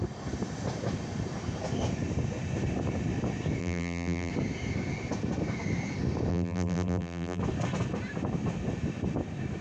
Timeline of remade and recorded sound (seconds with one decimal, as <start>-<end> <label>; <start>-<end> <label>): 0.0-3.6 recorded; 3.6-4.3 remade; 4.3-6.3 recorded; 6.3-7.4 remade; 7.4-9.6 recorded